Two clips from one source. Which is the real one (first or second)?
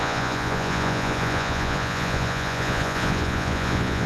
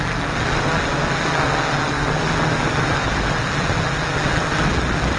second